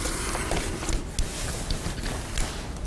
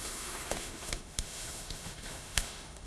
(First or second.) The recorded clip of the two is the first